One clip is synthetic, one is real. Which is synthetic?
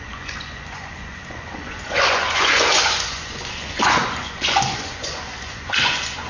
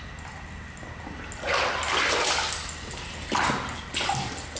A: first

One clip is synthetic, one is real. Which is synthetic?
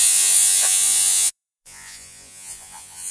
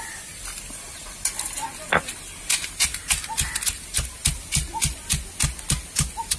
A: first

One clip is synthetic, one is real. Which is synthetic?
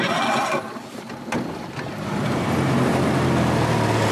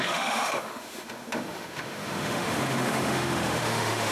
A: second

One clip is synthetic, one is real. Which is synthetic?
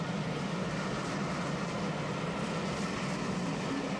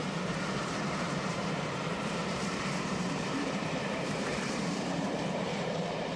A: second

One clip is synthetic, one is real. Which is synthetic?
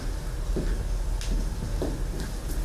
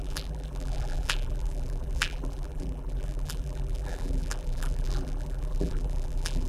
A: second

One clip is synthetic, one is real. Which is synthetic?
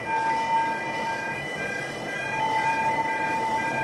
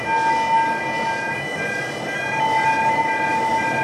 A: first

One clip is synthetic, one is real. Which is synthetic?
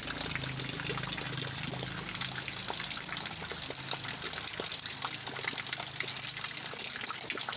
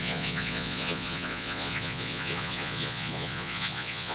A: second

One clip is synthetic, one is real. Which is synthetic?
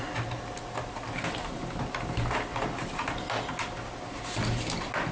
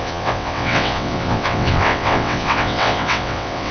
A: second